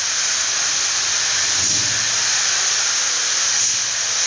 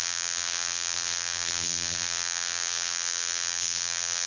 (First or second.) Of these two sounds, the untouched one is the first